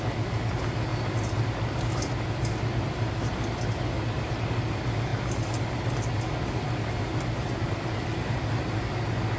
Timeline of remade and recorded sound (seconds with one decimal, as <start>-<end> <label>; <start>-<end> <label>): 0.0-9.4 recorded